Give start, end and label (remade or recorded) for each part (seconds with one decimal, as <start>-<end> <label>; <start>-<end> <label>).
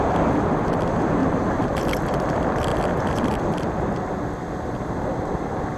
0.0-1.2 recorded; 1.2-1.8 remade; 1.8-5.8 recorded